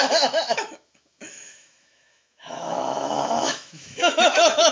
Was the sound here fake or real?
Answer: fake